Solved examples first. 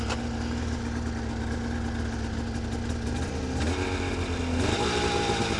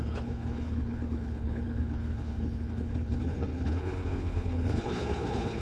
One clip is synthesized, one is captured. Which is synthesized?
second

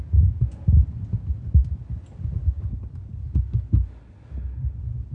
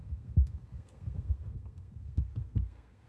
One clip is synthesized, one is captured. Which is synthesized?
second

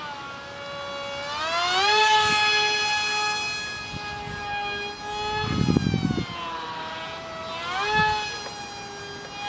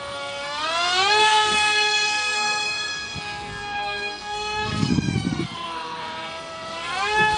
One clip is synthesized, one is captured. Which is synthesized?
second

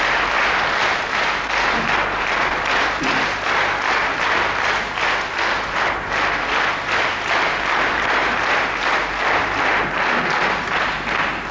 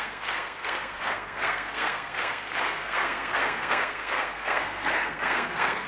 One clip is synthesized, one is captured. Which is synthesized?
second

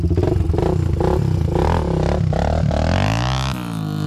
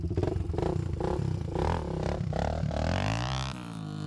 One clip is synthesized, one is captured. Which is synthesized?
second